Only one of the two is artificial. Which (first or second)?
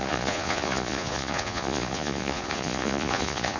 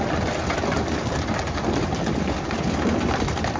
first